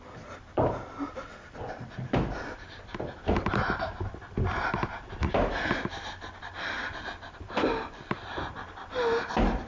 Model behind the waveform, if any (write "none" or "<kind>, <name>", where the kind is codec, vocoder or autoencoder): none